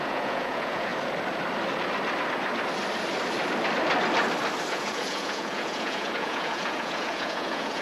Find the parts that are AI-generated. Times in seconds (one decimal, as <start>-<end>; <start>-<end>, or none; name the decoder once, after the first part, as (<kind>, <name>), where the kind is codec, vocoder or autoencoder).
0.0-0.9 (vocoder, Vocos); 4.7-7.8

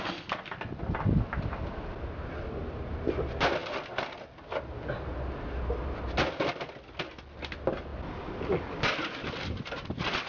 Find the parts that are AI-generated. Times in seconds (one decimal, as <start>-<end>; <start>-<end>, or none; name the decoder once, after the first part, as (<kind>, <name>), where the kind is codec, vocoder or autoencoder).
none